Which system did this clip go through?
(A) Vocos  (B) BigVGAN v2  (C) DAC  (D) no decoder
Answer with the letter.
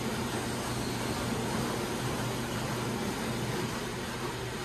D